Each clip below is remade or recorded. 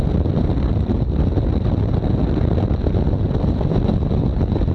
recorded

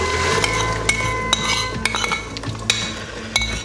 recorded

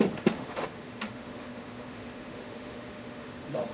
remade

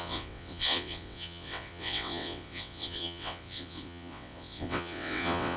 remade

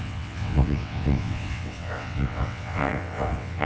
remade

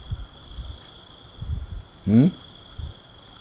recorded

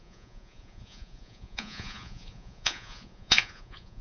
remade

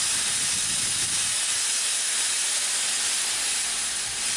recorded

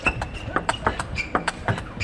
remade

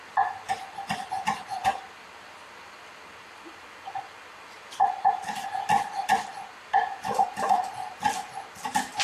recorded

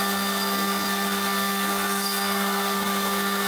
remade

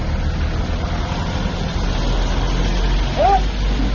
recorded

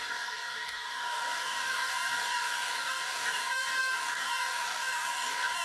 remade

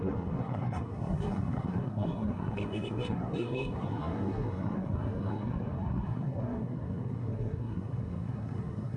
remade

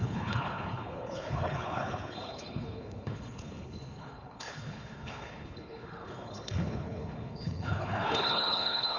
remade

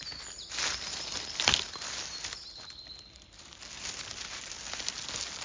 recorded